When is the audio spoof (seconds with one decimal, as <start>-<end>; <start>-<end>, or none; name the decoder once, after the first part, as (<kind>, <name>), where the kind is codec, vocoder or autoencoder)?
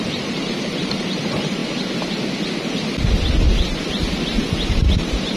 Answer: 0.0-1.6 (vocoder, BigVGAN v2); 4.7-5.4